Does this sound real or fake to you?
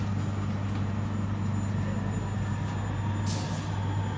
real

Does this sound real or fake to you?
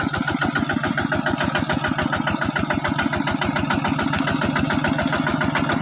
real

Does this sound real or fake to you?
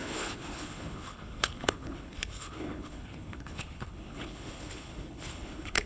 fake